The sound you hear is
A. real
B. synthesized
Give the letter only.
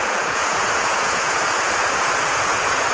B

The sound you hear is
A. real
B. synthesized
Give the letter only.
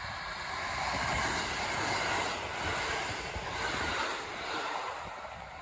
A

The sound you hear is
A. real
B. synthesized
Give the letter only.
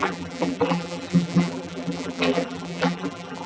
B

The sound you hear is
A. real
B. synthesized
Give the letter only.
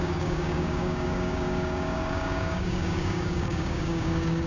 B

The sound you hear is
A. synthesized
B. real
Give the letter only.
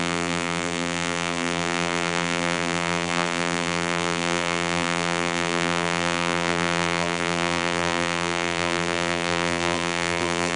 A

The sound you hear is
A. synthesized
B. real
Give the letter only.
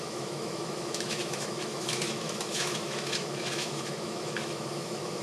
A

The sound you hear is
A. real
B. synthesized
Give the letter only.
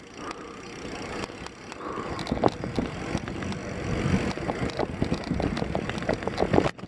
A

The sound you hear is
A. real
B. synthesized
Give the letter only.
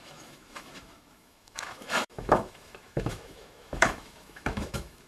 B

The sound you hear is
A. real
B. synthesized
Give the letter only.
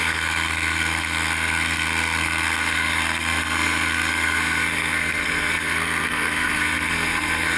B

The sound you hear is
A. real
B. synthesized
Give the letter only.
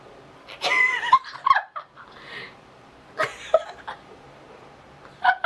B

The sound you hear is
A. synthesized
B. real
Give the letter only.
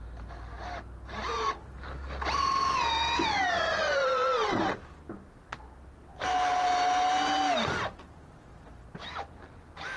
B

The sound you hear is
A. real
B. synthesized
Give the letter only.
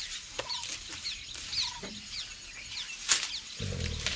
A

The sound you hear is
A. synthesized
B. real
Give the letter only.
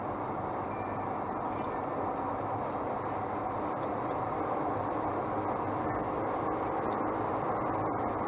A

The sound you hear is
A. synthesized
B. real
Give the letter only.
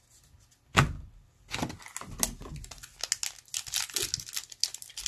B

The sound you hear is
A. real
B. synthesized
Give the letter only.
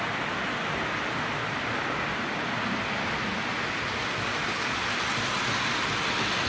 A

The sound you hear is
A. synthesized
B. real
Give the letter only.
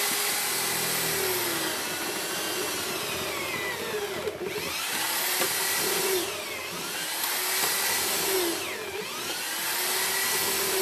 B